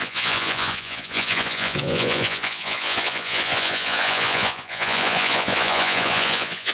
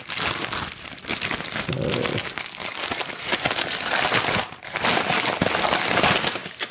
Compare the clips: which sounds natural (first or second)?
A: second